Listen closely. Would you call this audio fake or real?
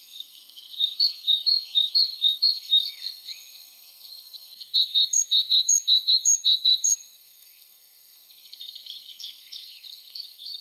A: fake